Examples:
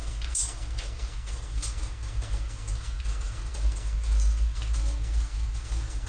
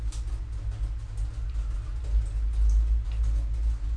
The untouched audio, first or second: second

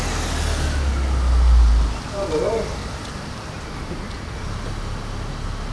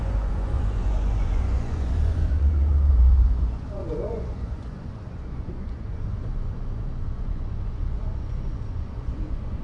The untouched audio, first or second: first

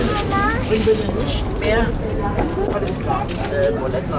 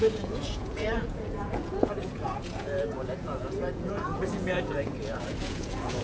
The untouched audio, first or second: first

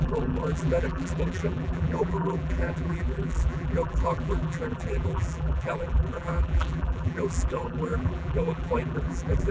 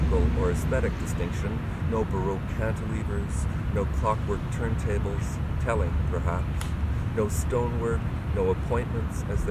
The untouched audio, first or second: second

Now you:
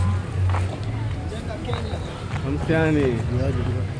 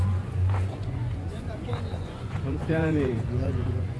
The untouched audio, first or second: first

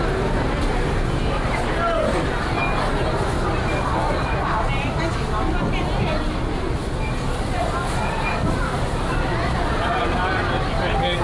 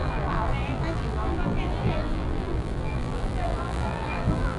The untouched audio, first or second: first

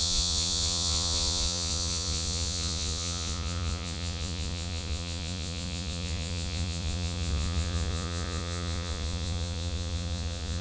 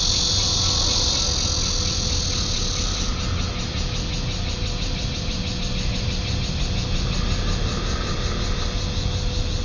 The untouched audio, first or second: second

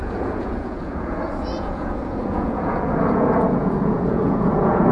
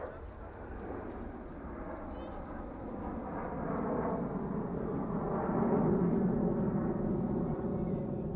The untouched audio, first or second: second